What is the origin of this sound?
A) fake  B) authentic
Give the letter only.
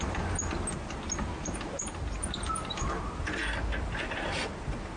B